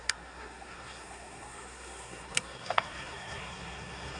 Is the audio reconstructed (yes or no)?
yes